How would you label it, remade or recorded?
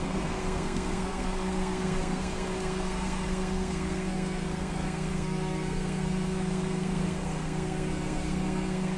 remade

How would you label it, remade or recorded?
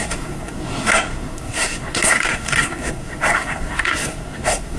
remade